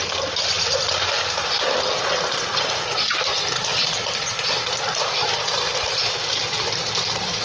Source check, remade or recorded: recorded